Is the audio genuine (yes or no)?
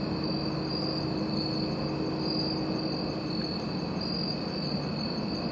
yes